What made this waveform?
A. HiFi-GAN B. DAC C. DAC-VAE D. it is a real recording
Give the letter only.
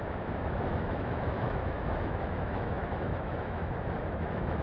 C